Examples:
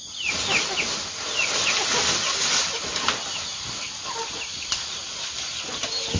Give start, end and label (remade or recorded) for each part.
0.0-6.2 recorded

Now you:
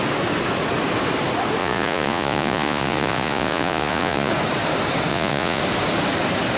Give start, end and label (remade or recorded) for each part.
0.0-1.6 recorded; 1.6-4.3 remade; 4.3-5.1 recorded; 5.1-5.6 remade; 5.6-6.6 recorded